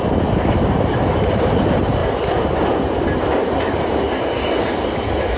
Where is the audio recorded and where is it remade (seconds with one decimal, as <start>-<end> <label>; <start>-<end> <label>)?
0.0-5.4 recorded